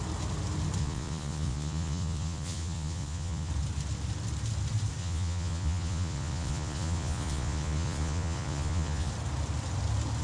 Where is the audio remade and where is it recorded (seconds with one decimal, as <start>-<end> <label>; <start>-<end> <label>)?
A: 0.0-0.8 recorded; 0.8-3.5 remade; 3.5-5.0 recorded; 5.0-9.1 remade; 9.1-10.2 recorded